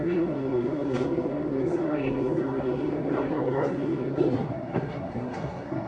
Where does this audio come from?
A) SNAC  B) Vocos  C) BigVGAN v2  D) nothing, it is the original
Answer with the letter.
A